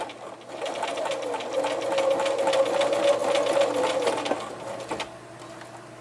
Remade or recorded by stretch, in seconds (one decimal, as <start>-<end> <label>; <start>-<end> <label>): 0.0-6.0 recorded